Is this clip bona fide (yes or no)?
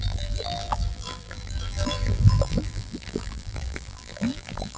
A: no